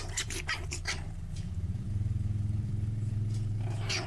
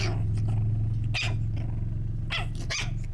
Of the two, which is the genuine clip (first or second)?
second